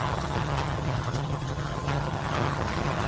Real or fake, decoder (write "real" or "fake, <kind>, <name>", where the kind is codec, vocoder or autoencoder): fake, vocoder, HiFi-GAN